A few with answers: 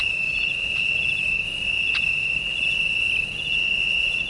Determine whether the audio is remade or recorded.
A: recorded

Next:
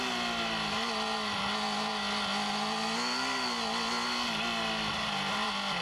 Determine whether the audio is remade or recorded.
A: recorded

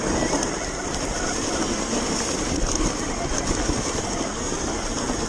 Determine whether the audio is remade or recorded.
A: recorded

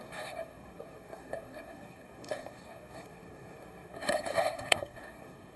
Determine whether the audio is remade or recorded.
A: remade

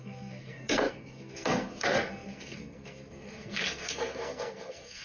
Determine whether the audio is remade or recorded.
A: remade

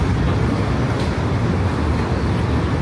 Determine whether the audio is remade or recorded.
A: recorded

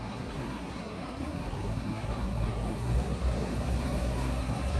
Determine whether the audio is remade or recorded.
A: remade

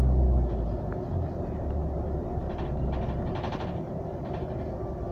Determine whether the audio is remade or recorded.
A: recorded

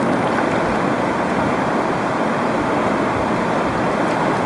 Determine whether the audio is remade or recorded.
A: recorded